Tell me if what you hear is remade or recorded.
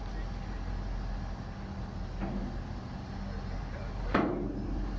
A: recorded